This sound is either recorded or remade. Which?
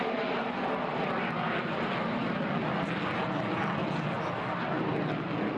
recorded